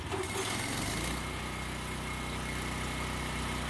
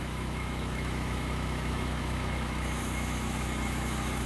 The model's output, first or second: second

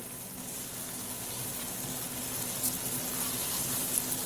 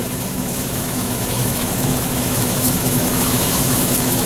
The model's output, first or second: second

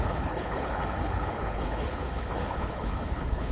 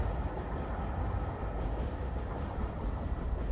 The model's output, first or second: first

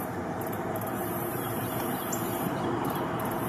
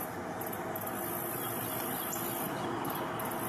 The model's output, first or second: first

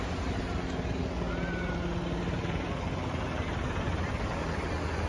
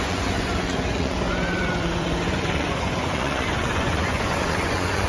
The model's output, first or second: second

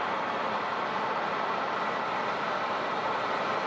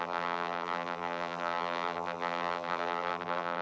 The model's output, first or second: second